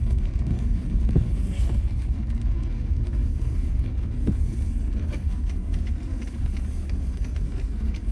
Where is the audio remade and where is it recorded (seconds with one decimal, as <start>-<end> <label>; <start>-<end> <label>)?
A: 0.0-8.1 remade